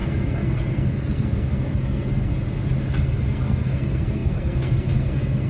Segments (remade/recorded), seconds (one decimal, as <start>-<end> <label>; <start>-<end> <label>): 0.0-2.3 remade; 2.3-2.8 recorded; 2.8-5.5 remade